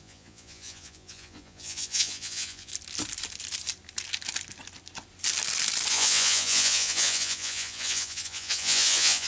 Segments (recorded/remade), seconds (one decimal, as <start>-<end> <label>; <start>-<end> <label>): 0.0-2.7 remade; 2.7-5.9 recorded; 5.9-9.3 remade